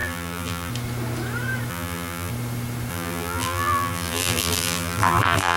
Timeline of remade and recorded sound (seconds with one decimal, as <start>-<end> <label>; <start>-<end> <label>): 0.0-0.7 remade; 0.7-1.7 recorded; 1.7-2.3 remade; 2.3-2.9 recorded; 2.9-5.6 remade